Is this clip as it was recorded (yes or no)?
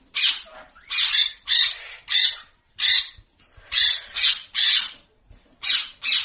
yes